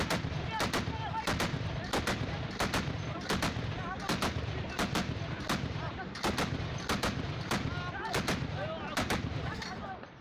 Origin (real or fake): real